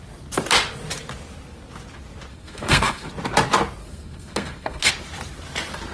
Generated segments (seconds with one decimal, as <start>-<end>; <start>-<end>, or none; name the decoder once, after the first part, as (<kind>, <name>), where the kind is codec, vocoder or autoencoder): 2.3-3.1 (codec, SNAC); 3.8-4.9